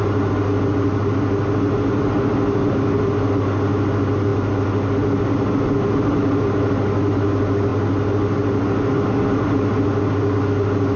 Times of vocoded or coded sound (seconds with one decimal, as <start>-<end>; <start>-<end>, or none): none